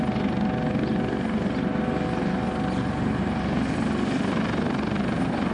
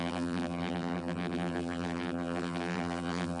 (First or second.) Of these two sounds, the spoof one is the second